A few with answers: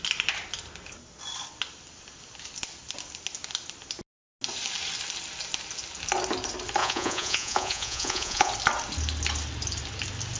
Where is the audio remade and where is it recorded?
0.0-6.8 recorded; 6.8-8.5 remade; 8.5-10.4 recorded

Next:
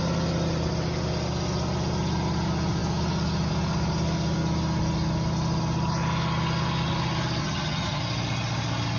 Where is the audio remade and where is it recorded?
0.0-7.4 recorded; 7.4-8.0 remade; 8.0-9.0 recorded